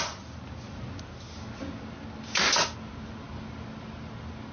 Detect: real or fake real